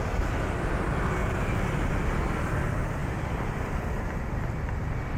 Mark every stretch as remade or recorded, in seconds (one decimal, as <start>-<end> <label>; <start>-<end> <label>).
0.0-1.2 recorded; 1.2-1.9 remade; 1.9-5.2 recorded